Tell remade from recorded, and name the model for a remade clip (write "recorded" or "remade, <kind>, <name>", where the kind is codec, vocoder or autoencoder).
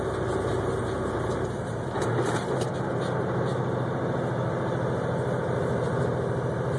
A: recorded